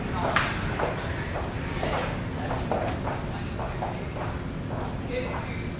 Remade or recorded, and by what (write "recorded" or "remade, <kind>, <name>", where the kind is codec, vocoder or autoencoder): recorded